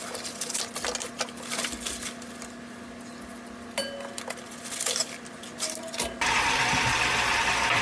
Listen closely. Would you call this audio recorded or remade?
recorded